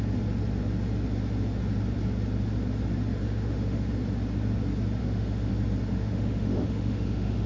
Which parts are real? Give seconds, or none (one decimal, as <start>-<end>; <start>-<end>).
0.0-3.2; 3.9-5.0; 5.5-5.9